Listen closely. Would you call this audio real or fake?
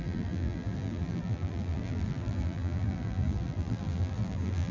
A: fake